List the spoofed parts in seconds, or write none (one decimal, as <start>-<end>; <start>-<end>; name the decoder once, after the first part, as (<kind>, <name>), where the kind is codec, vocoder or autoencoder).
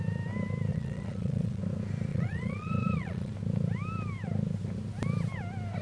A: 0.7-1.6 (vocoder, Vocos); 2.1-3.3